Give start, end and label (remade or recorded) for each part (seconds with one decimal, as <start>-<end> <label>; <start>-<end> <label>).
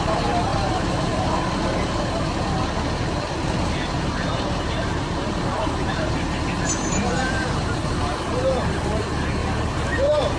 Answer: 0.0-0.5 recorded; 0.5-1.3 remade; 1.3-4.3 recorded; 4.3-8.0 remade; 8.0-9.4 recorded; 9.4-10.4 remade